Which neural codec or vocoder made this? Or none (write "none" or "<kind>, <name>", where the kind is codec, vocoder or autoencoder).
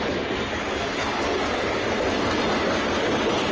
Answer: none